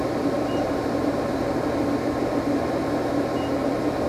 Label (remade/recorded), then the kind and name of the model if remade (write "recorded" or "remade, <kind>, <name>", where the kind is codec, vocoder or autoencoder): remade, vocoder, BigVGAN v2